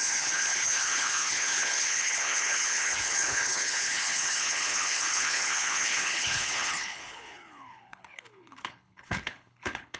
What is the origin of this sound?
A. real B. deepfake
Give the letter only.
B